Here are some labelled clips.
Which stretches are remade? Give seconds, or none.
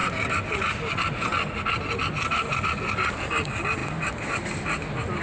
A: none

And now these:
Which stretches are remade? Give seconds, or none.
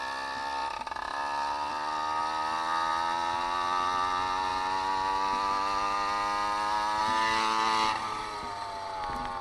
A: none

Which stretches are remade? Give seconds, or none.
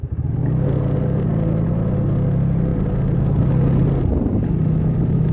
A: none